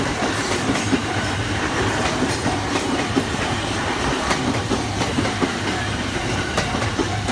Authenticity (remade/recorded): remade